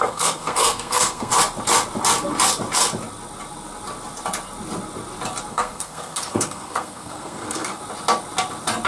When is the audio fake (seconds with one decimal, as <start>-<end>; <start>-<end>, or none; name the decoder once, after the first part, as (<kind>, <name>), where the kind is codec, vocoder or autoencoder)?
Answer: 0.0-1.3 (codec, SNAC); 5.5-7.8